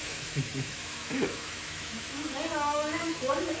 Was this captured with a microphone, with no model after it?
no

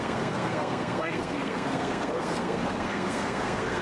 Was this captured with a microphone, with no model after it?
no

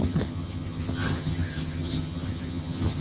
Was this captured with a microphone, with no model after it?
no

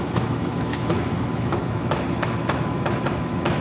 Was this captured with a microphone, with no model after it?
no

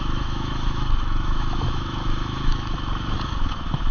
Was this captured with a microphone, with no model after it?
no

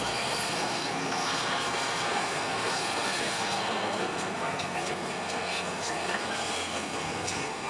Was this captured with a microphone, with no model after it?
no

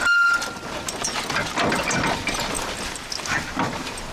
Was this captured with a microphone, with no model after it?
yes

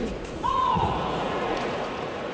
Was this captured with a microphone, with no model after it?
no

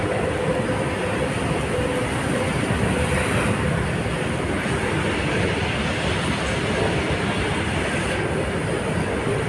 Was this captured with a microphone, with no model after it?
yes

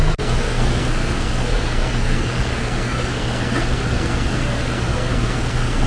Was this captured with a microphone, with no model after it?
no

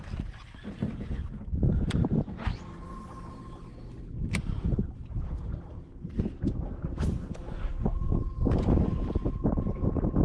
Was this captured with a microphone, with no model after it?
yes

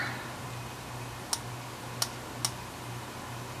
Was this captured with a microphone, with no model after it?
yes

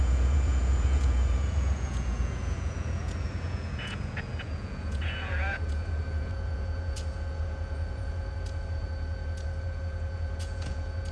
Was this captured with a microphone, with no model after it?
no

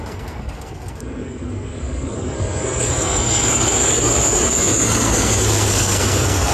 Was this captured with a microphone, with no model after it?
no